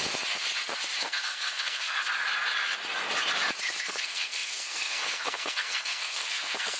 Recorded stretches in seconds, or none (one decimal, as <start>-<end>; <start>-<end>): 0.0-1.0; 2.0-3.8